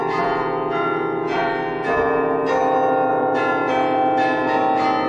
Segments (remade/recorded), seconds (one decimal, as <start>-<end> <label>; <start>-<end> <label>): 0.0-1.5 remade; 1.5-3.1 recorded; 3.1-3.7 remade; 3.7-5.1 recorded